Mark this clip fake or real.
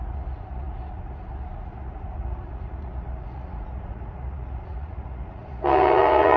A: fake